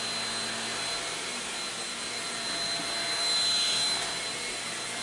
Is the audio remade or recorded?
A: recorded